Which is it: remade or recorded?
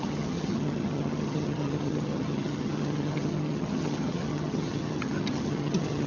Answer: remade